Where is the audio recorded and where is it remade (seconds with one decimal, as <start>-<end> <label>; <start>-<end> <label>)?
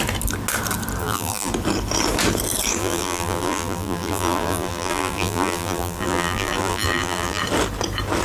0.0-1.0 recorded; 1.0-1.5 remade; 1.5-2.8 recorded; 2.8-7.4 remade; 7.4-8.2 recorded